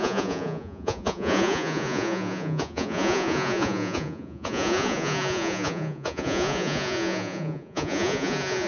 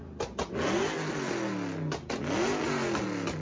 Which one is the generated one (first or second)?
first